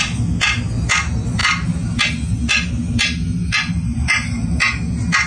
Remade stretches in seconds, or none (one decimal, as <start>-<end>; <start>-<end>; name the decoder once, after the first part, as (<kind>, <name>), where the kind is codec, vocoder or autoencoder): none